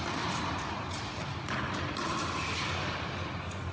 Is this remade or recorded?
recorded